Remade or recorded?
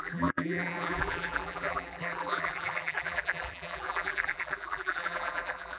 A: remade